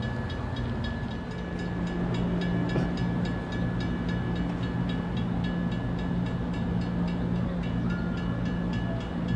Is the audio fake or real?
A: real